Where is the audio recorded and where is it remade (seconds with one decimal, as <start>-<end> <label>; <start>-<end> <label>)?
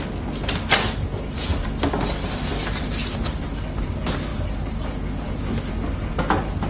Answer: 0.0-6.7 recorded